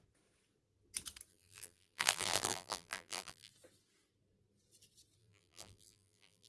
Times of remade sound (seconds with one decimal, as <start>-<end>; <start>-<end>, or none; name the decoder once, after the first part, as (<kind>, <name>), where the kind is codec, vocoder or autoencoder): 1.3-3.5 (vocoder, BigVGAN v2); 5.2-6.5